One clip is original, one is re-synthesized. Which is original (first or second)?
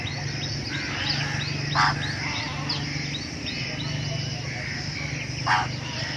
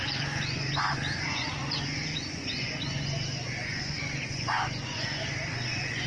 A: first